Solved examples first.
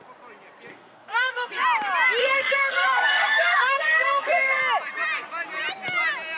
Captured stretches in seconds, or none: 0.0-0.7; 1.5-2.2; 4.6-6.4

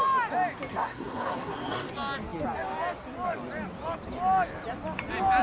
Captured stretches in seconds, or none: 0.0-0.7; 1.9-5.4

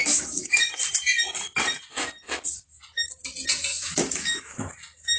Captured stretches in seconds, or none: 0.6-3.7; 4.7-5.2

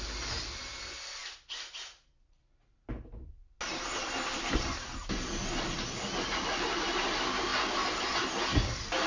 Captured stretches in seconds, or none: 0.0-9.1

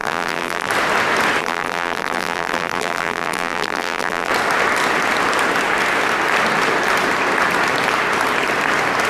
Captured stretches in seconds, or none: 0.7-1.4; 4.3-9.1

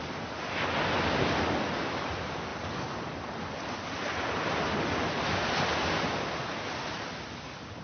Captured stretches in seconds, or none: 0.0-7.8

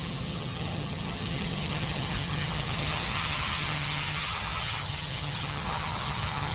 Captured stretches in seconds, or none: none